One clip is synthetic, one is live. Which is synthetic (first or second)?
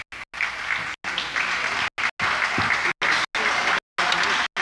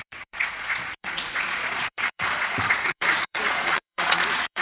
second